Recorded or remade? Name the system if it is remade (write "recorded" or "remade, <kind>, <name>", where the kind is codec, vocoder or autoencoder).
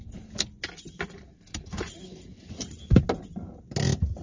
recorded